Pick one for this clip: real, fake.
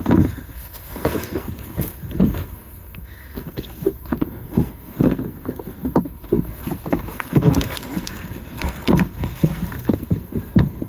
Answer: fake